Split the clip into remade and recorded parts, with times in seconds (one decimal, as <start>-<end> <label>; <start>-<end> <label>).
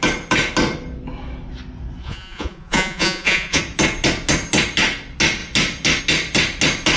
0.0-2.0 recorded; 2.0-3.6 remade; 3.6-7.0 recorded